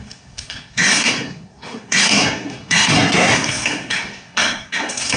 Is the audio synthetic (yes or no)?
yes